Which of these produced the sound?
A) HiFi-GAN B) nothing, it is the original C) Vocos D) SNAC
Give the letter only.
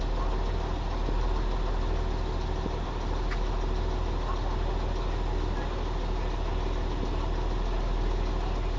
B